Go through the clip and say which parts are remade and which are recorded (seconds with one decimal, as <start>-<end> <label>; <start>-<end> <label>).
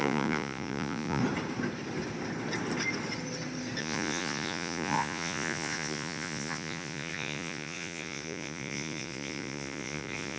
0.0-1.2 remade; 1.2-3.8 recorded; 3.8-10.4 remade